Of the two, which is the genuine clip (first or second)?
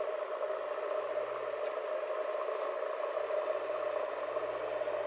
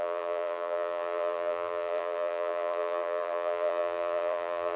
first